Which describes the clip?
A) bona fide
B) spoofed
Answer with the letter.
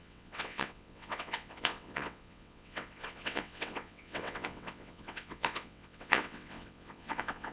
B